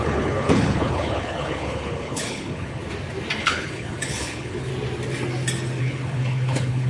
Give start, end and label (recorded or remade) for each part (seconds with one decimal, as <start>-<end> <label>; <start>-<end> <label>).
0.0-2.8 remade; 2.8-3.4 recorded; 3.4-4.7 remade; 4.7-5.8 recorded; 5.8-6.9 remade